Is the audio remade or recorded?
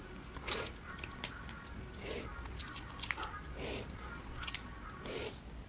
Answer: recorded